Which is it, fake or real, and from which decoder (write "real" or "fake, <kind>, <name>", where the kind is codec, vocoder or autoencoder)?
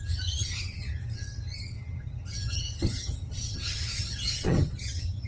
fake, vocoder, HiFi-GAN